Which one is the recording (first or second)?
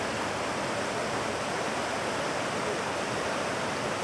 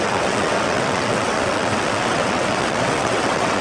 first